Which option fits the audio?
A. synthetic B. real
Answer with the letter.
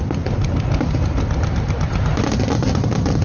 B